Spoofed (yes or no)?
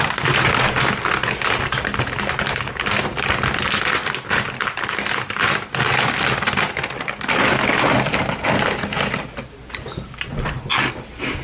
no